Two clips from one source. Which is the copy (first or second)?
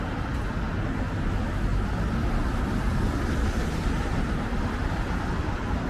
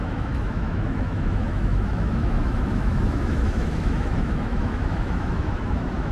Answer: second